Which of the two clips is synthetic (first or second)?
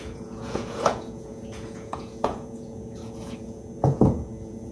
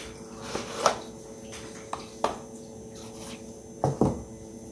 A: first